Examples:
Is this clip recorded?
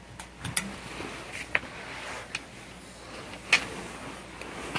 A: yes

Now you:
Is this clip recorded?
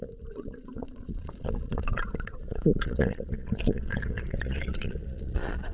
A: no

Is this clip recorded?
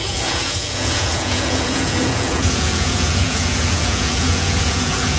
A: no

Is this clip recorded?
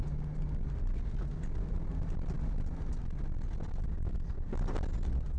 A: yes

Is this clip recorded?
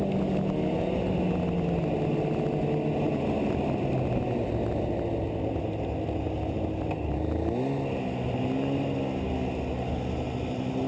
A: yes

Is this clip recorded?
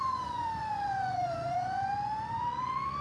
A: no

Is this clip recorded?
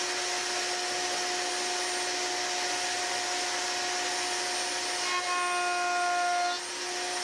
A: yes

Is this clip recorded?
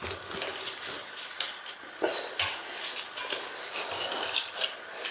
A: yes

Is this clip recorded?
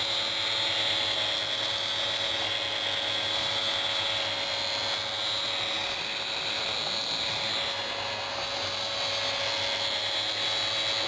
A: yes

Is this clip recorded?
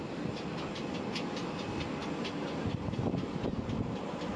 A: yes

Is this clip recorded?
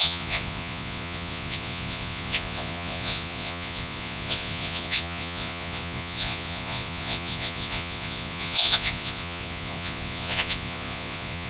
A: no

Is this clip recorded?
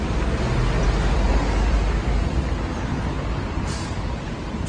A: yes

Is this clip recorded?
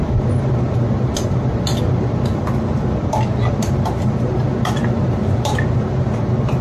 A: yes